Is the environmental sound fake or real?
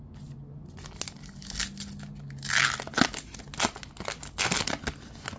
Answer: real